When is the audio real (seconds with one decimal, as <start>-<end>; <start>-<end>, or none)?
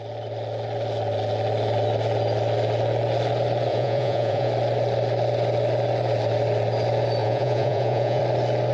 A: 0.0-3.7; 4.5-7.2; 8.2-8.7